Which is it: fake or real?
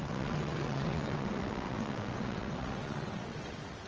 fake